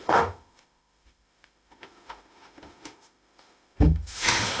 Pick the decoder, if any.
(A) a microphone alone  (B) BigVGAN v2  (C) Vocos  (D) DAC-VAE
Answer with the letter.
D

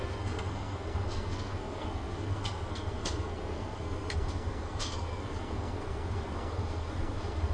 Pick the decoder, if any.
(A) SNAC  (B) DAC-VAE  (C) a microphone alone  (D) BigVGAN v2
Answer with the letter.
A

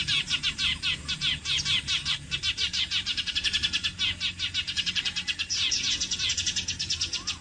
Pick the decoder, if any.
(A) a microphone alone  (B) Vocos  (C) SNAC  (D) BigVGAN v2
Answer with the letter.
D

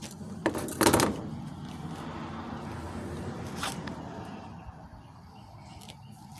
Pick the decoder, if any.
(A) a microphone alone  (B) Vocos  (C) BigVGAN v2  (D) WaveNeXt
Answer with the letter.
A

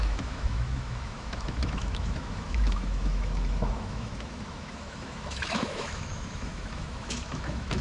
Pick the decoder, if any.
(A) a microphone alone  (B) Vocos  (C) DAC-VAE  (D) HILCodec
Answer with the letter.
C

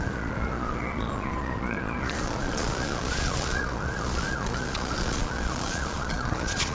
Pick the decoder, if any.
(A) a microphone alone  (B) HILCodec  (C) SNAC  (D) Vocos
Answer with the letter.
D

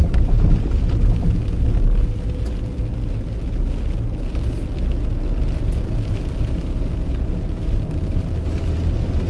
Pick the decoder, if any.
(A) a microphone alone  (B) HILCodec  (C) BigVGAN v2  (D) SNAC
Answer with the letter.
A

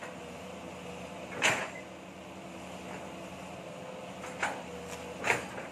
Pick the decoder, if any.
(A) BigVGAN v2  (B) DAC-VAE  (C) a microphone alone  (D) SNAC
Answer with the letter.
C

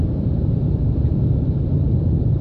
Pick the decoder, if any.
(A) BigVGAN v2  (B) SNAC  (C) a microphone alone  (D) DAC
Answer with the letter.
A